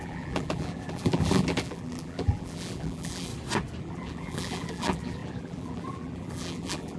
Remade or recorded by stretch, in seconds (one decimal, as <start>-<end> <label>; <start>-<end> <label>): 0.0-3.3 remade; 3.3-3.8 recorded; 3.8-7.0 remade